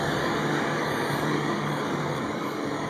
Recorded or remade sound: remade